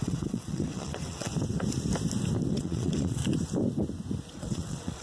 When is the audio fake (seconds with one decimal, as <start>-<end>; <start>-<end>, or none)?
0.0-1.3; 2.5-3.2; 4.3-5.0